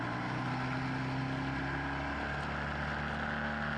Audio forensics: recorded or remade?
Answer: recorded